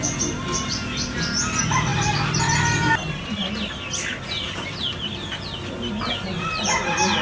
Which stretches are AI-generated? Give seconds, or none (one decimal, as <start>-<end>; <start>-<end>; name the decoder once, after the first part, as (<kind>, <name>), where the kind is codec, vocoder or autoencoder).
1.9-3.5 (vocoder, BigVGAN v2)